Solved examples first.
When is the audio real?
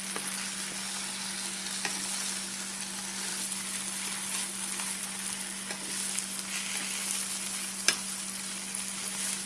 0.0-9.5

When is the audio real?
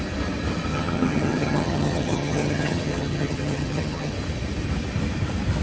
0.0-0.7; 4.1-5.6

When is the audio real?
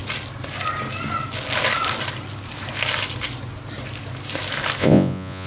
0.0-4.8